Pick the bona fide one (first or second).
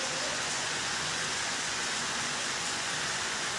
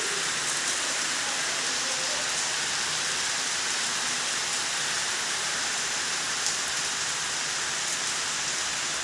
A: second